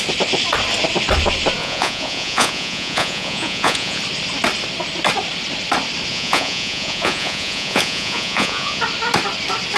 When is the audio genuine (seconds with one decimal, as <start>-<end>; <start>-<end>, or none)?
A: 0.0-1.6; 4.0-6.1; 8.8-9.8